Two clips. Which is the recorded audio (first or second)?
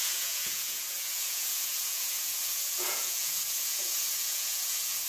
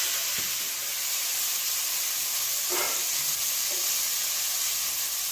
second